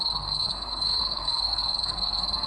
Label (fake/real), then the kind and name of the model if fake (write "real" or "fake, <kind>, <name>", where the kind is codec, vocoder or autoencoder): fake, codec, SNAC